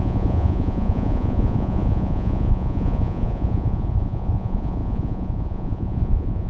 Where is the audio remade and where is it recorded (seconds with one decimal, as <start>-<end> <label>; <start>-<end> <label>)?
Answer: 0.0-6.5 remade